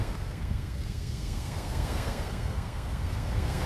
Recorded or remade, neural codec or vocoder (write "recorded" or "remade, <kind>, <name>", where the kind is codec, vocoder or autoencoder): remade, codec, SNAC